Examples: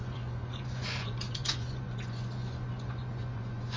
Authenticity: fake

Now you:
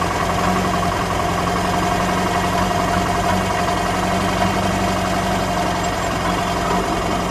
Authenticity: real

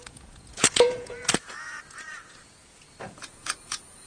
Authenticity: fake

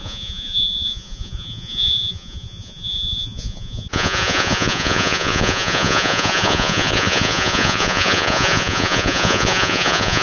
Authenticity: fake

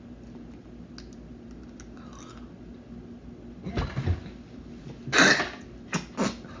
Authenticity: real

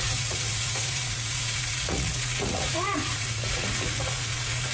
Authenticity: fake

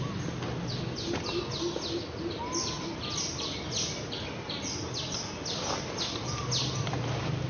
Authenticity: real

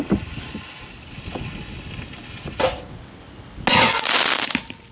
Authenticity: real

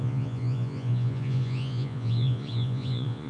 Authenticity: fake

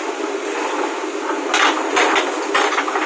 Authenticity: real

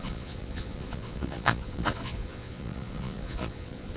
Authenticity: fake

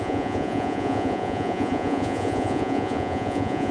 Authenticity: fake